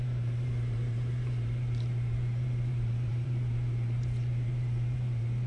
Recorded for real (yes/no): no